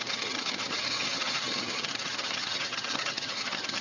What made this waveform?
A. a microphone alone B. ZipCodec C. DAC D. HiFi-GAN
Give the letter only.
D